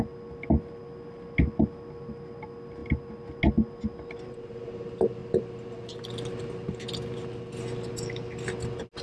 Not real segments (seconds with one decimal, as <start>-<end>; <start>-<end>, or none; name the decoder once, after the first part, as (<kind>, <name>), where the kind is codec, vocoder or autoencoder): none